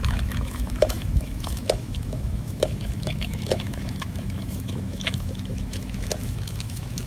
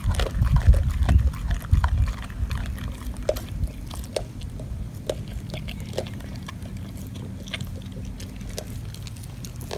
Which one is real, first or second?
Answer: second